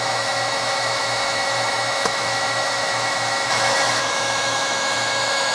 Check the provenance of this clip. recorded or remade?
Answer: remade